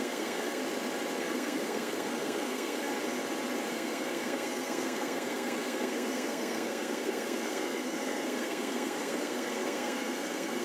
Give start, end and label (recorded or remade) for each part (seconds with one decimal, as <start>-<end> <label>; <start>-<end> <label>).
0.0-0.6 remade; 0.6-1.2 recorded; 1.2-2.9 remade; 2.9-3.7 recorded; 3.7-10.6 remade